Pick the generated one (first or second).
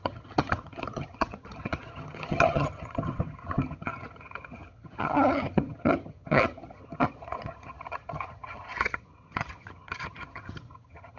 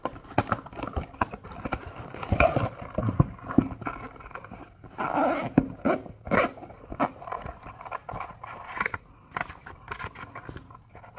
first